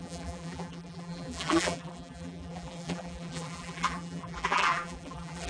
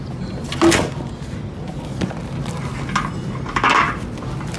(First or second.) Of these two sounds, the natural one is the second